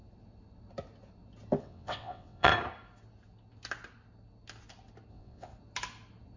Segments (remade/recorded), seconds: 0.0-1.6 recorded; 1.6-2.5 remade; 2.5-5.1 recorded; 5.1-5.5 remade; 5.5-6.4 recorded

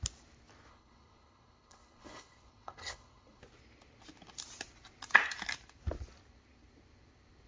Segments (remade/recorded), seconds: 0.0-0.7 recorded; 0.7-3.4 remade; 3.4-7.5 recorded

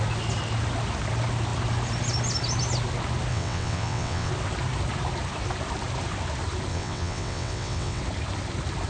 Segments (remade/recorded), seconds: 0.0-3.3 recorded; 3.3-4.3 remade; 4.3-6.7 recorded; 6.7-8.0 remade; 8.0-8.9 recorded

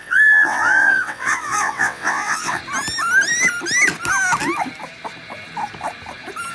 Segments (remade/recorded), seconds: 0.0-2.6 remade; 2.6-6.5 recorded

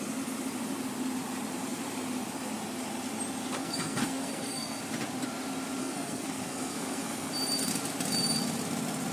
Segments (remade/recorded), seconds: 0.0-3.6 recorded; 3.6-4.8 remade; 4.8-5.8 recorded; 5.8-7.3 remade; 7.3-9.1 recorded

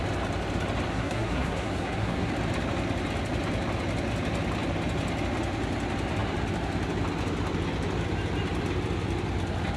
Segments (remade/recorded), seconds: 0.0-0.9 recorded; 0.9-2.3 remade; 2.3-9.8 recorded